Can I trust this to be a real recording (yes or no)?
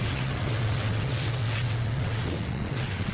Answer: no